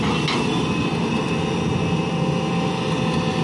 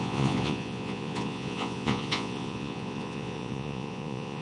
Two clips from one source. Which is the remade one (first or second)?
second